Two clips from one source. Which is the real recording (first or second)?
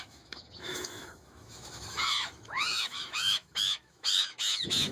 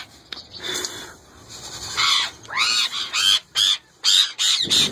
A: second